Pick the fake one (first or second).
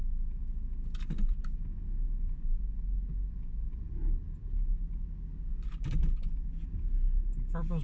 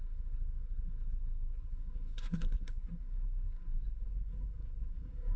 second